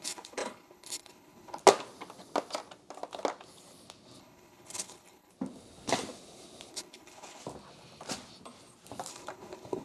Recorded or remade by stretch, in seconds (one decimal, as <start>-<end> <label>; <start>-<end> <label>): 0.0-1.6 remade; 1.6-4.2 recorded; 4.2-5.3 remade; 5.3-6.7 recorded; 6.7-7.4 remade; 7.4-9.1 recorded; 9.1-9.8 remade

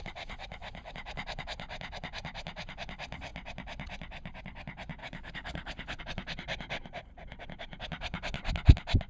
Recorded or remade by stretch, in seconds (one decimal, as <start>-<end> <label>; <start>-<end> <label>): 0.0-5.0 recorded; 5.0-6.0 remade; 6.0-9.1 recorded

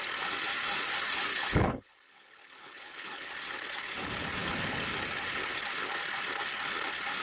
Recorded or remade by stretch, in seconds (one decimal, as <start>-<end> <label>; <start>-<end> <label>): 0.0-1.3 recorded; 1.3-3.3 remade; 3.3-7.2 recorded

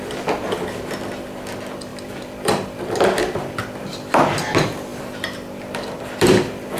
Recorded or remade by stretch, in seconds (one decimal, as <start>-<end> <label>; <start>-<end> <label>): 0.0-1.9 recorded; 1.9-3.6 remade; 3.6-4.9 recorded; 4.9-5.6 remade; 5.6-6.8 recorded

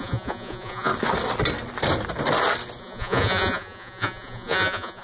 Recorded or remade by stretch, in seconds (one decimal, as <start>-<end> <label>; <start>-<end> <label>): 0.0-0.9 remade; 0.9-2.8 recorded; 2.8-5.0 remade

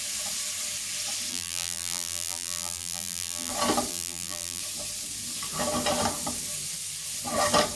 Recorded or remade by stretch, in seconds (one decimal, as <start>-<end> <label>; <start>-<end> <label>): 0.0-1.3 recorded; 1.3-3.5 remade; 3.5-3.9 recorded; 3.9-4.6 remade; 4.6-7.8 recorded